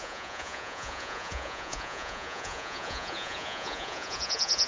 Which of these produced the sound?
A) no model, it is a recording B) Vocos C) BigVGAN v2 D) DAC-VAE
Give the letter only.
B